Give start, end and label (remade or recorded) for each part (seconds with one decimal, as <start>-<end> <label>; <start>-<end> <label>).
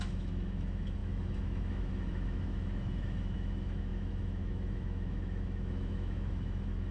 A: 0.0-6.9 remade